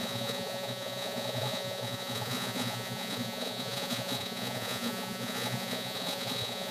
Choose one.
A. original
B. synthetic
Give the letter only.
B